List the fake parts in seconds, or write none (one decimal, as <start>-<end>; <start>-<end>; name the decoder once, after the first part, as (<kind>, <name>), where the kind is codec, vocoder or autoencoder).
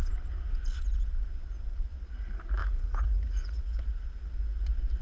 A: 2.6-3.6 (vocoder, Vocos)